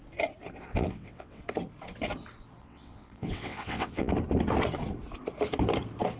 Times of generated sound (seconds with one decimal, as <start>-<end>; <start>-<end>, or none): 0.7-1.4; 2.6-4.1